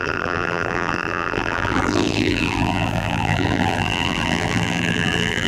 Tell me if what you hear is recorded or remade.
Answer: remade